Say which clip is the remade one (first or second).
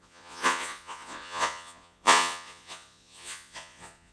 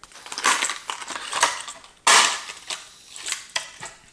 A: first